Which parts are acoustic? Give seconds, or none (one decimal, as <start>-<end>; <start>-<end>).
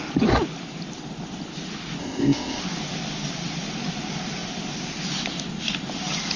0.0-2.0; 2.6-6.4